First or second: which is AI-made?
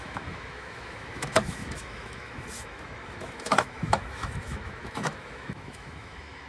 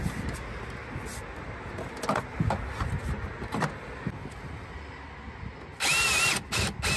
first